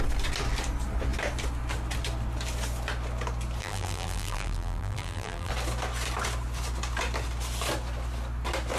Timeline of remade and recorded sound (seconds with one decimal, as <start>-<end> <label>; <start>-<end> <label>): 0.0-3.6 recorded; 3.6-5.5 remade; 5.5-8.8 recorded